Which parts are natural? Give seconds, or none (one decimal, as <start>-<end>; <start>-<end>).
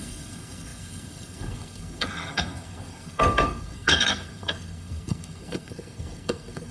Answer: none